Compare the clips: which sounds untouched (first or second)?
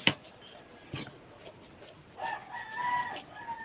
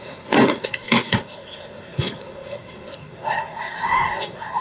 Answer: first